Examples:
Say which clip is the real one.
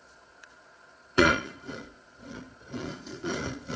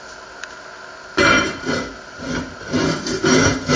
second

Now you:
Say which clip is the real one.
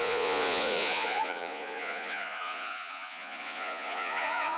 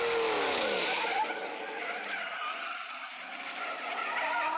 second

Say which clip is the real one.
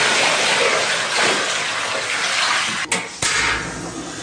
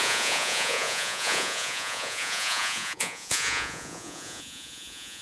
first